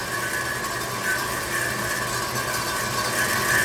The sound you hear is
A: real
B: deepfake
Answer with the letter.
A